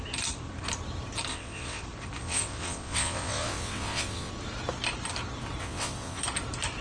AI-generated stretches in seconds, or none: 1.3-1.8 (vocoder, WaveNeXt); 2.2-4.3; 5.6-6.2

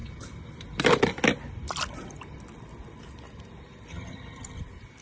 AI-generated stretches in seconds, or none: 3.9-4.6 (vocoder, HiFi-GAN)

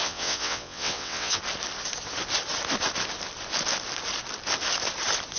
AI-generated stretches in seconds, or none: 0.0-1.4 (vocoder, WaveNeXt)